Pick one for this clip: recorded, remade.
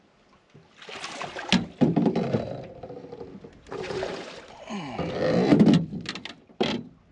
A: recorded